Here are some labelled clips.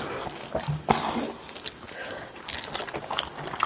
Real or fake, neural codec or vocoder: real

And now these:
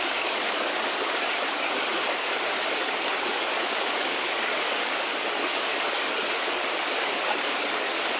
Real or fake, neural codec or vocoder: fake, codec, DAC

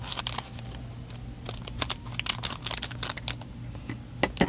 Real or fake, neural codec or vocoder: real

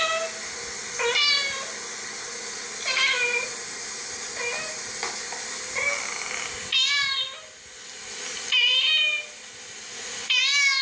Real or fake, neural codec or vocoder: real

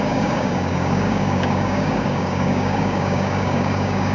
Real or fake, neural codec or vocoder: fake, codec, DAC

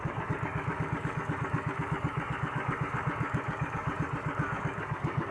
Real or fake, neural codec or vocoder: fake, codec, DAC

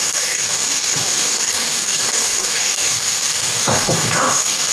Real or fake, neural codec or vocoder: fake, codec, DAC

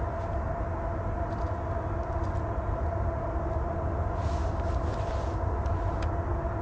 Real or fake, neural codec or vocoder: real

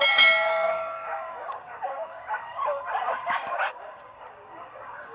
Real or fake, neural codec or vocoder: fake, codec, DAC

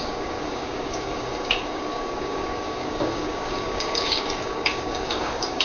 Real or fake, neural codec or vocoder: fake, codec, DAC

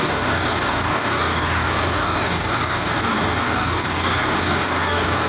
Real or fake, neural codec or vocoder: fake, codec, DAC